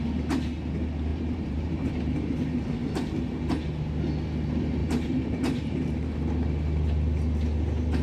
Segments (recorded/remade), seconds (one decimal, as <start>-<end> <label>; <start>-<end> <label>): 0.0-1.1 recorded; 1.1-1.9 remade; 1.9-4.8 recorded; 4.8-6.2 remade; 6.2-8.0 recorded